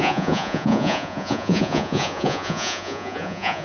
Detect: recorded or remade remade